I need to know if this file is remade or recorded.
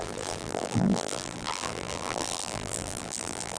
remade